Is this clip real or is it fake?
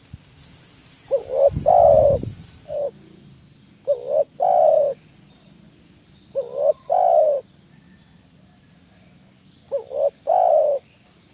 real